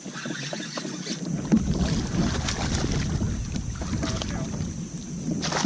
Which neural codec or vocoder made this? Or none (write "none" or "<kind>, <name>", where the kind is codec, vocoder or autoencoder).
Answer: none